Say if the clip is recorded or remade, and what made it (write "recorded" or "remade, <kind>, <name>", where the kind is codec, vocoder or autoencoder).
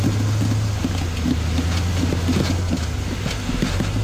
recorded